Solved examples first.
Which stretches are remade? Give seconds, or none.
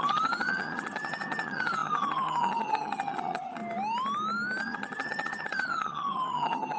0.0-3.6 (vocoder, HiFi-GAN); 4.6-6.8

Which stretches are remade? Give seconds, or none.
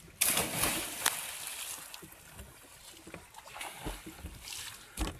none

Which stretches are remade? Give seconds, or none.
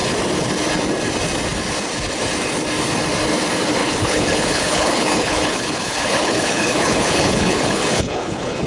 3.8-8.7 (codec, HILCodec)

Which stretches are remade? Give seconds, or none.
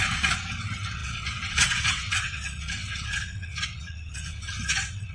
0.0-5.1 (vocoder, WaveNeXt)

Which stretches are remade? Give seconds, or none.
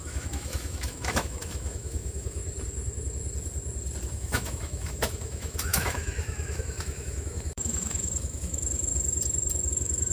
0.0-2.4 (autoencoder, DAC-VAE); 4.0-8.9; 9.7-10.1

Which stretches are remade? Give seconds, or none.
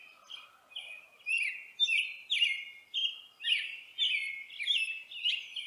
3.4-3.9 (vocoder, BigVGAN v2); 5.3-5.7